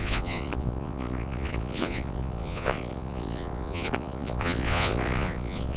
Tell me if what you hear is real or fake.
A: fake